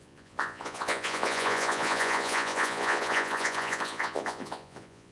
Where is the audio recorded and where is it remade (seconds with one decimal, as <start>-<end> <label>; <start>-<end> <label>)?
0.0-5.1 remade